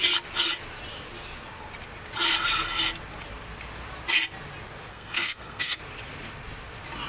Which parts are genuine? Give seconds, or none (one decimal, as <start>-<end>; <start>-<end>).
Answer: 0.0-4.9; 5.8-7.1